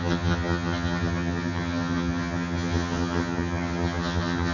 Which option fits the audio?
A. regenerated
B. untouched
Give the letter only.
A